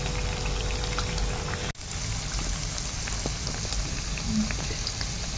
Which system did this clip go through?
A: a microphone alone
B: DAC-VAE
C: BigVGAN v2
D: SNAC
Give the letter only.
A